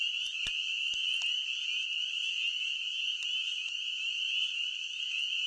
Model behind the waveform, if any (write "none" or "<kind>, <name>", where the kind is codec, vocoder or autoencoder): none